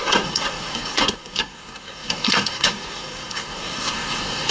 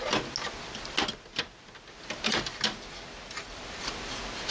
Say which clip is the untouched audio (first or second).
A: second